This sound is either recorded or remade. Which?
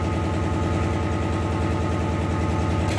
recorded